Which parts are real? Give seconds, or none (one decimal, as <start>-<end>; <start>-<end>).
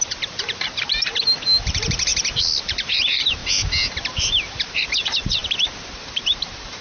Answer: 1.1-1.6; 2.1-2.6; 3.4-4.0; 5.4-5.9